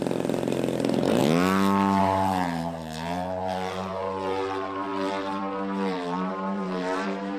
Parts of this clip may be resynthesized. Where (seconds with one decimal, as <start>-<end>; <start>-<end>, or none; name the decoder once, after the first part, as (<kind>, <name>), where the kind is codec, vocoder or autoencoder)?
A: 0.0-1.2 (vocoder, BigVGAN v2); 2.0-7.4